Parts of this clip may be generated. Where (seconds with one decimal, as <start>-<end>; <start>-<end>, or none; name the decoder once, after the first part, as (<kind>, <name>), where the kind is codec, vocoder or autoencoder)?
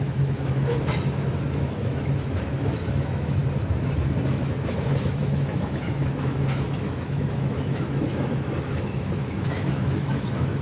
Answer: 0.0-3.4 (autoencoder, DAC-VAE); 4.3-10.6